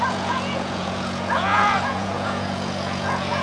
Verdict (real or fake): fake